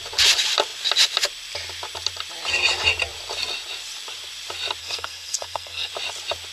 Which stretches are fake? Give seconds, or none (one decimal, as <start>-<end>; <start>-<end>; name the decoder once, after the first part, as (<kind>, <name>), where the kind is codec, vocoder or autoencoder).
4.8-5.9 (codec, SNAC)